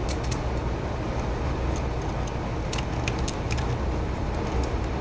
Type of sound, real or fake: real